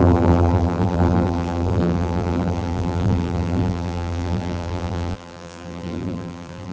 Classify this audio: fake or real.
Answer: fake